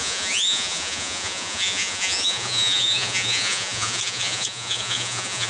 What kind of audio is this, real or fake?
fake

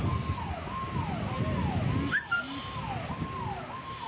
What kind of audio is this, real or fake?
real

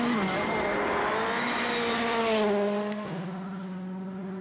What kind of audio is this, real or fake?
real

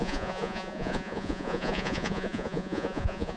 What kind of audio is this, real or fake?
fake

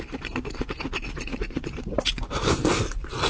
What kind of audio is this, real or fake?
fake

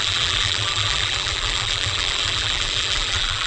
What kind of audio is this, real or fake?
fake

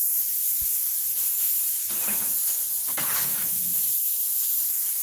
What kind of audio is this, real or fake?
fake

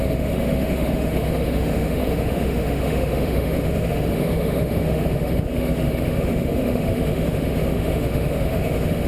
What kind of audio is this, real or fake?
fake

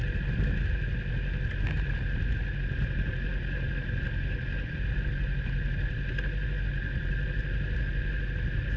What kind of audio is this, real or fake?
real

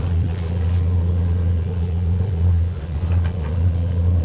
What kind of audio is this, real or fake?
fake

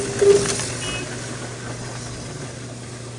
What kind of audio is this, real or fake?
real